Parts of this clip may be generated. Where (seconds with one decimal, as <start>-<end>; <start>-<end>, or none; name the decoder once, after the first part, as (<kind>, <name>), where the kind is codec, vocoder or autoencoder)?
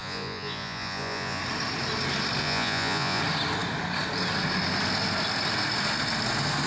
0.0-1.4 (vocoder, Vocos); 2.4-3.2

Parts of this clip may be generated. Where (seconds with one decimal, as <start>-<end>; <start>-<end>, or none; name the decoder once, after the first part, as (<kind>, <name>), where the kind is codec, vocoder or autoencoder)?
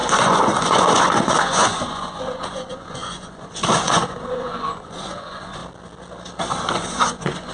0.0-5.6 (vocoder, Vocos); 6.7-7.5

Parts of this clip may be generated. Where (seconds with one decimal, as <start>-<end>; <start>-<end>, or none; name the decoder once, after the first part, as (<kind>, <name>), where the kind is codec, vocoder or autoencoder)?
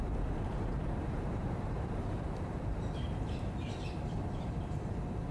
0.7-3.9 (vocoder, BigVGAN v2)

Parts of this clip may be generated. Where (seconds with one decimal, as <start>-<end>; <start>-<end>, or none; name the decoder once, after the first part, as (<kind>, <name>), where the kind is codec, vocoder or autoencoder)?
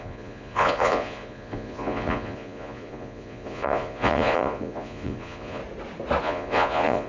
0.0-5.6 (vocoder, Vocos); 6.2-7.1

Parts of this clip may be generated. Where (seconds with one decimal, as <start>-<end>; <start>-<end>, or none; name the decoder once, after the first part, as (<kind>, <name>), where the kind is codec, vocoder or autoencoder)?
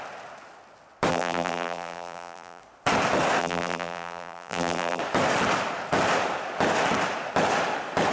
1.1-2.6 (vocoder, BigVGAN v2); 3.4-5.0